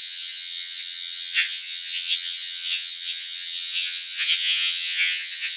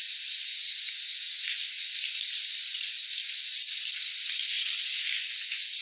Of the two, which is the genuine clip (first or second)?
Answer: second